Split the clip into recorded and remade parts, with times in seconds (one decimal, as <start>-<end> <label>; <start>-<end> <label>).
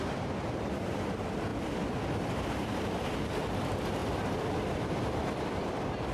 0.0-6.1 remade